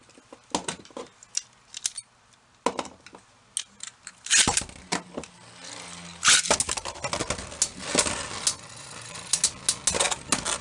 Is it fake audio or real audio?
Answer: real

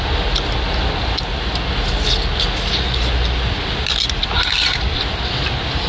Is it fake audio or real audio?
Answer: real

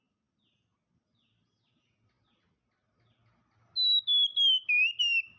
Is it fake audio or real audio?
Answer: real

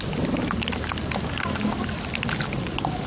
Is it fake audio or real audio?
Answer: real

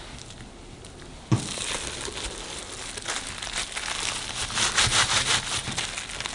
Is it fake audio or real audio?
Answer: real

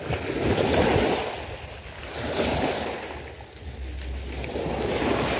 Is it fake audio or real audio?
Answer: real